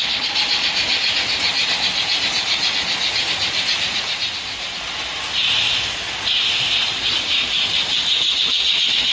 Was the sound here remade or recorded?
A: recorded